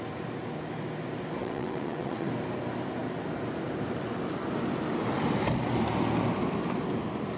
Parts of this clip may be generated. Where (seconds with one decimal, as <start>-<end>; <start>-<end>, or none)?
1.4-2.3